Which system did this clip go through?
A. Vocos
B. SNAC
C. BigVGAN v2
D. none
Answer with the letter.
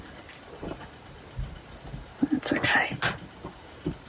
D